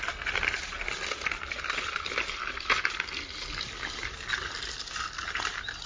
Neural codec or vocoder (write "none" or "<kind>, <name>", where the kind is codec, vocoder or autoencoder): none